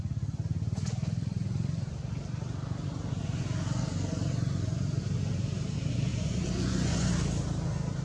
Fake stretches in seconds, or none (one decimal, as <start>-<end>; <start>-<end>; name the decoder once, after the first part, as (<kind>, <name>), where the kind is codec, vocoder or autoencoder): 6.1-7.1 (vocoder, Vocos)